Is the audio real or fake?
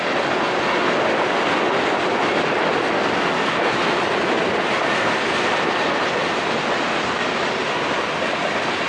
real